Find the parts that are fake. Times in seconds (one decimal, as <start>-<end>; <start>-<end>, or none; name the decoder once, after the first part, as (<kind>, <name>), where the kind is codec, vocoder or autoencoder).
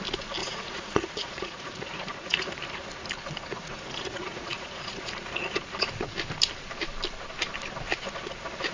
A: 0.4-2.5 (vocoder, Vocos); 3.5-5.1